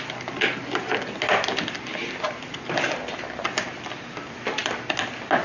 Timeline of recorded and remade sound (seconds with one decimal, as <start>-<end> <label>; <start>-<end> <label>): 0.0-5.4 recorded